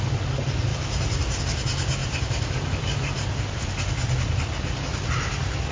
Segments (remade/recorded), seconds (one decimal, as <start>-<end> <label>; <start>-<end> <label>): 0.0-0.7 recorded; 0.7-1.4 remade; 1.4-2.0 recorded; 2.0-3.8 remade; 3.8-5.7 recorded